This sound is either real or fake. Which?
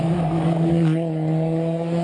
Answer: fake